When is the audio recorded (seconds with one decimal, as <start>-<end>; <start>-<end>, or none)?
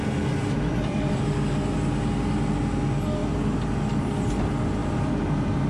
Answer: 0.0-0.4; 1.2-4.8